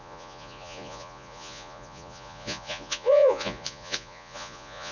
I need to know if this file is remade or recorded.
remade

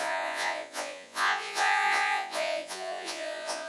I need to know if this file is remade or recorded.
remade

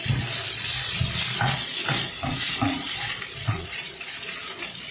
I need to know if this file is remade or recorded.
remade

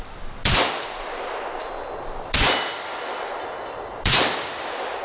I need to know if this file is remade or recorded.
recorded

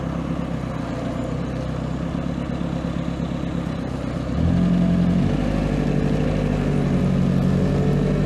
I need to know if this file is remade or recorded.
recorded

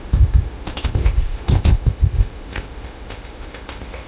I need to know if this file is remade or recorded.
remade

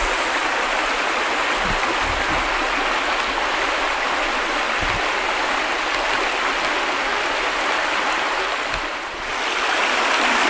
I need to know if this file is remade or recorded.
recorded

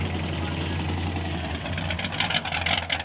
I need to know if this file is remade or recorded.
recorded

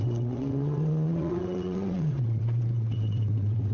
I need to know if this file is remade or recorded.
remade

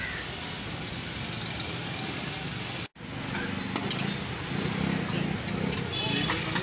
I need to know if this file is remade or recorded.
recorded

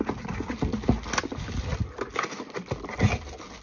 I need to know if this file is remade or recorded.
recorded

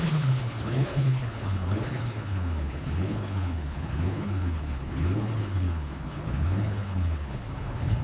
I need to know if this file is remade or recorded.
remade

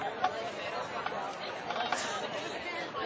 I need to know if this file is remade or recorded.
recorded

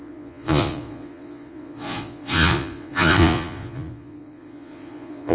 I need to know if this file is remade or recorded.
remade